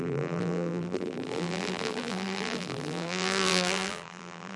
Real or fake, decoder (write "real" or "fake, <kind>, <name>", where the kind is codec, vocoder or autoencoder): fake, vocoder, BigVGAN v2